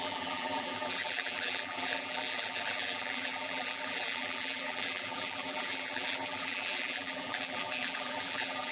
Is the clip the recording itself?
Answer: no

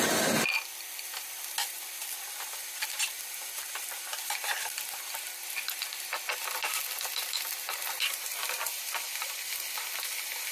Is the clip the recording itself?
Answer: yes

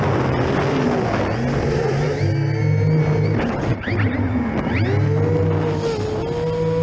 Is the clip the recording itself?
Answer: yes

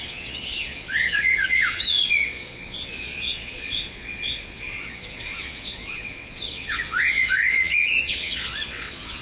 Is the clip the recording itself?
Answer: no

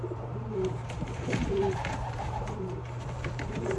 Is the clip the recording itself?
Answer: no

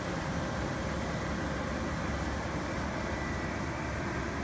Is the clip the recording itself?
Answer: yes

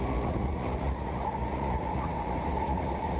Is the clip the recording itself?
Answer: no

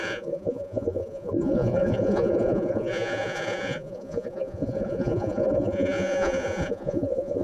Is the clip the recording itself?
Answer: no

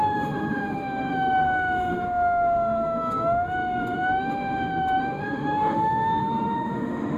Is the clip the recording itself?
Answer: no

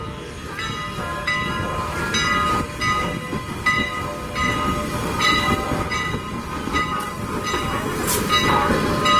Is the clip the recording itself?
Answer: yes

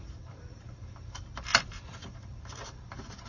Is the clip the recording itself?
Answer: no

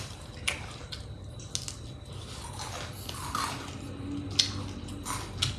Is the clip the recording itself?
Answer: yes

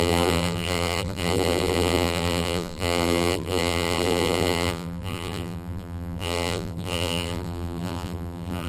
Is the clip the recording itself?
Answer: no